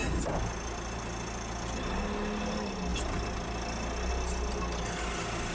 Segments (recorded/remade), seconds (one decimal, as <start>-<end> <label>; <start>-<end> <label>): 0.0-5.5 recorded

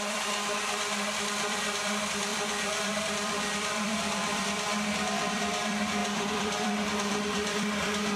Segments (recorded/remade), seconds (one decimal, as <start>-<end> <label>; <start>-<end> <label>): 0.0-4.7 remade; 4.7-5.2 recorded; 5.2-8.2 remade